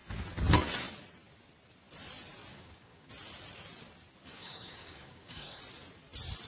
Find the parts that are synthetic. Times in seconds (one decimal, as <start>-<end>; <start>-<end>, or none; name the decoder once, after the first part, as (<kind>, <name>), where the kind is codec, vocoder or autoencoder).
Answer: 2.5-3.1 (codec, DAC); 4.3-5.6